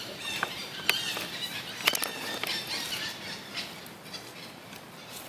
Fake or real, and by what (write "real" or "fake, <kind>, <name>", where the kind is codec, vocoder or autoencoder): real